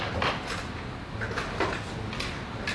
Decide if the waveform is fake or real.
real